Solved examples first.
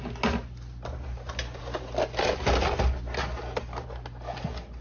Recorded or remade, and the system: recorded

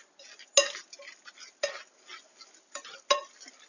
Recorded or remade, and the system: recorded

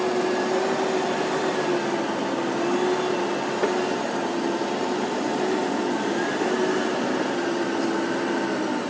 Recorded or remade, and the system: recorded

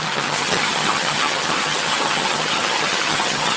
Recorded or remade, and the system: remade, vocoder, HiFi-GAN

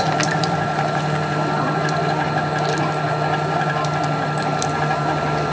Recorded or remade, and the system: recorded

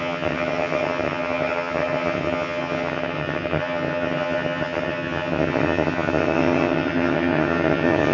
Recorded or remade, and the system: remade, vocoder, HiFi-GAN